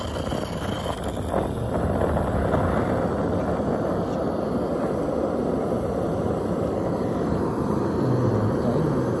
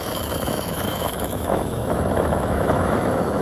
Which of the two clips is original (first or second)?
first